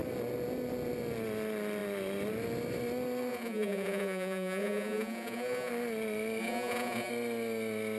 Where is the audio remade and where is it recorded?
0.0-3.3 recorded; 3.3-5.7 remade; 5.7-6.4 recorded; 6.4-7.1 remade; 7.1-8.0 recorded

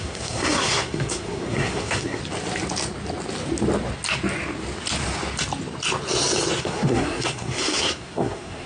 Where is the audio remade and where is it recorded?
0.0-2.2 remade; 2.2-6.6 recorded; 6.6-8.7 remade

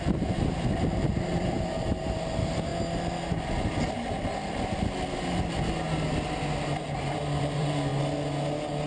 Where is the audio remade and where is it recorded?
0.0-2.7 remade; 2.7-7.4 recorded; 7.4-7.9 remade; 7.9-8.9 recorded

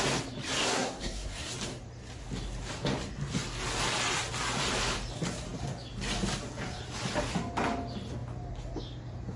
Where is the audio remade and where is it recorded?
0.0-0.6 recorded; 0.6-1.5 remade; 1.5-9.4 recorded

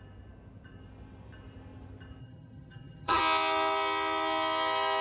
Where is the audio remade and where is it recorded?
0.0-2.2 recorded; 2.2-3.2 remade; 3.2-5.0 recorded